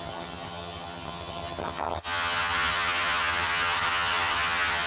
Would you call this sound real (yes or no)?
no